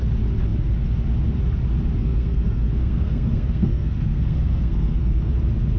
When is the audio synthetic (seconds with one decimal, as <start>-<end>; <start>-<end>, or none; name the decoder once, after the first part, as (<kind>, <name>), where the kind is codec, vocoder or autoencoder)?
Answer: 2.0-5.3 (codec, SNAC)